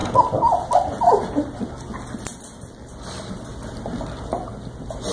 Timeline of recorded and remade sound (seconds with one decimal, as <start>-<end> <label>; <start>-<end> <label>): 0.0-5.1 recorded